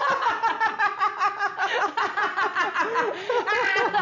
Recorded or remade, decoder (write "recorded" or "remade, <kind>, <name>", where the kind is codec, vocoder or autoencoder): recorded